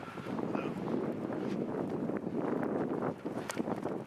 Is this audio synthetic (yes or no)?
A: no